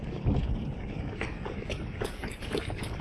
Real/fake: fake